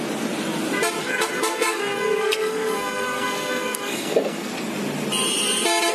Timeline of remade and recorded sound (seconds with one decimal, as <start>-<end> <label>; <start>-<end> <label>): 0.0-1.0 recorded; 1.0-4.5 remade; 4.5-5.9 recorded